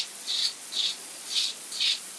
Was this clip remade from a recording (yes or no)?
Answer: yes